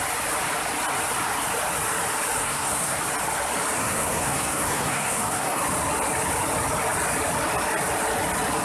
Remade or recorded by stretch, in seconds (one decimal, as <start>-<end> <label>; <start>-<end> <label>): 0.0-2.4 recorded; 2.4-3.0 remade; 3.0-3.8 recorded; 3.8-5.6 remade; 5.6-8.6 recorded